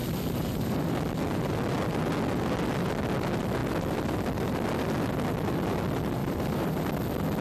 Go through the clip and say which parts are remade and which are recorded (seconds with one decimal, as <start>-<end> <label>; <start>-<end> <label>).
0.0-0.9 remade; 0.9-6.2 recorded; 6.2-6.8 remade; 6.8-7.4 recorded